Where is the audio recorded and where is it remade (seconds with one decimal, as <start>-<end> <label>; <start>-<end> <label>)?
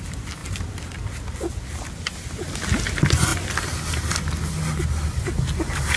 0.0-6.0 recorded